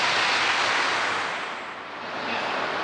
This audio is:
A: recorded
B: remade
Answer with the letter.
A